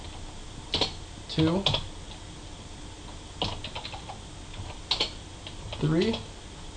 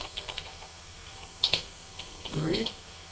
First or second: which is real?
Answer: first